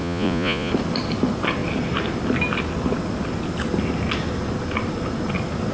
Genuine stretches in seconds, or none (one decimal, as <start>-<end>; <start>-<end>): 0.7-5.7